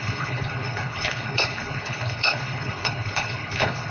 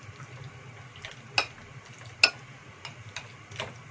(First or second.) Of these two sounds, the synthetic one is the first